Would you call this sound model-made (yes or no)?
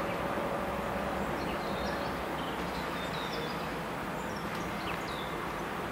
no